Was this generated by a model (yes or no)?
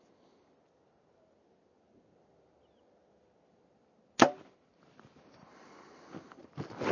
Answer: no